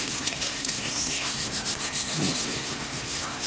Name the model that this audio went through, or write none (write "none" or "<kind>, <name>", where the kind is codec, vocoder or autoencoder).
codec, SNAC